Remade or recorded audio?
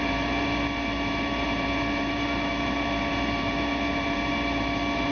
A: remade